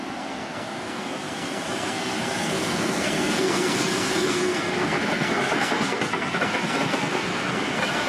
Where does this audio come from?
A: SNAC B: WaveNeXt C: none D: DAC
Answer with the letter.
A